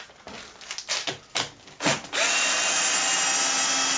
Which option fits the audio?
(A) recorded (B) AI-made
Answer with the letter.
A